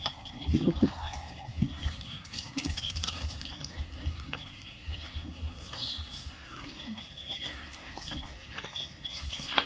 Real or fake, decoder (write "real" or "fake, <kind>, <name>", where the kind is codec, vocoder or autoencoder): fake, codec, SNAC